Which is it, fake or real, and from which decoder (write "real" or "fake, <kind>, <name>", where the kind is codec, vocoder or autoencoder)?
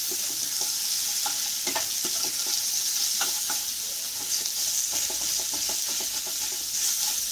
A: real